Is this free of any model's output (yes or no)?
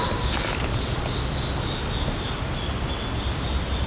yes